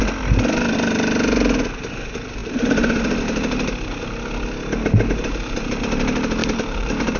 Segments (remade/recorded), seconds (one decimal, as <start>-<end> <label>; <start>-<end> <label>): 0.0-6.4 recorded; 6.4-7.2 remade